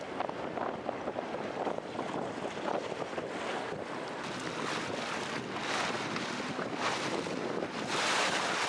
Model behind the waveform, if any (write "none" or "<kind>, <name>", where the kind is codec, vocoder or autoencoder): none